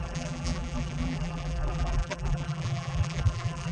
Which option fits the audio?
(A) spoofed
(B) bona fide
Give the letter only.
A